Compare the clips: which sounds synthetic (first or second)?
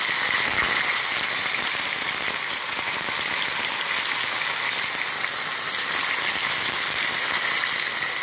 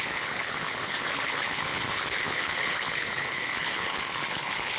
second